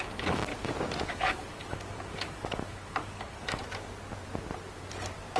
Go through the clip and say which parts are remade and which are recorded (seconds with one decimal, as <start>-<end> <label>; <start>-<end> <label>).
0.0-0.5 remade; 0.5-1.1 recorded; 1.1-3.6 remade; 3.6-5.4 recorded

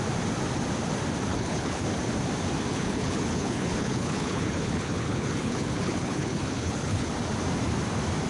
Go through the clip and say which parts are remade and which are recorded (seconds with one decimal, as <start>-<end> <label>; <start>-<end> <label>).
0.0-1.3 recorded; 1.3-1.8 remade; 1.8-2.7 recorded; 2.7-7.1 remade; 7.1-8.3 recorded

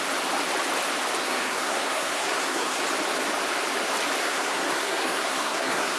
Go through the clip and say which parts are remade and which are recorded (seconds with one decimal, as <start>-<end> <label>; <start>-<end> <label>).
0.0-1.2 recorded; 1.2-2.8 remade; 2.8-4.2 recorded; 4.2-6.0 remade